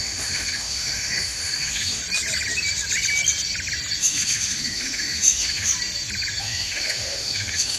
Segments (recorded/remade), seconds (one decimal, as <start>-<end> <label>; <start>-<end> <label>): 0.0-2.0 remade; 2.0-4.0 recorded; 4.0-5.7 remade; 5.7-6.4 recorded; 6.4-7.8 remade